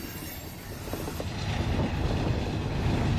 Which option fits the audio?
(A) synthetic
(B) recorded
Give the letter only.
B